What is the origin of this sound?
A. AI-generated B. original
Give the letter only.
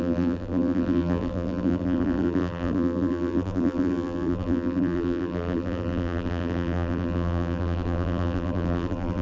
A